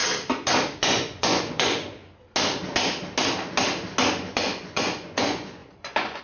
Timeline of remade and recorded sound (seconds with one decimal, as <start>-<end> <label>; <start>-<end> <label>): 0.0-0.8 recorded; 0.8-2.0 remade; 2.0-4.1 recorded; 4.1-6.2 remade